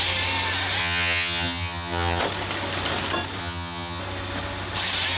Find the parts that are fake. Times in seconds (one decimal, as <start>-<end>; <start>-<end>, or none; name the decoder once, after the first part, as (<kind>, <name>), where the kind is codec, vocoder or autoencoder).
0.8-2.2 (vocoder, HiFi-GAN); 3.4-4.0